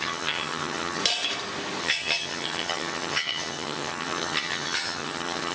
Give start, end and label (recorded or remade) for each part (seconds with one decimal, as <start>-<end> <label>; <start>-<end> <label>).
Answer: 0.0-1.0 remade; 1.0-1.8 recorded; 1.8-5.5 remade